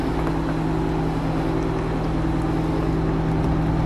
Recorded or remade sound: recorded